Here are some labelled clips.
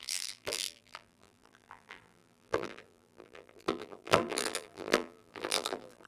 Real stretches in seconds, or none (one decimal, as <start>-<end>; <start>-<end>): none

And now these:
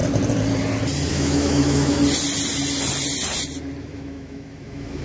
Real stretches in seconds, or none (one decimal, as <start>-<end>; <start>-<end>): 0.0-1.1; 2.0-3.8

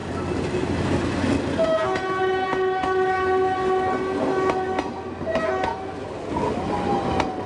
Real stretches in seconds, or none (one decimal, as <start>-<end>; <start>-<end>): 0.0-7.5